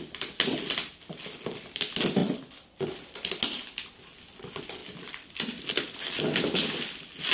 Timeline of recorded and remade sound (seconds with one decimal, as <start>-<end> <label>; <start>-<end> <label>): 0.0-4.8 recorded; 4.8-5.7 remade; 5.7-7.3 recorded